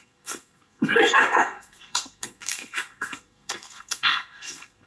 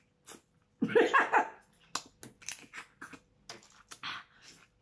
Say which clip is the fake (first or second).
first